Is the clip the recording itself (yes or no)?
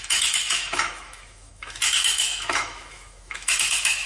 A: no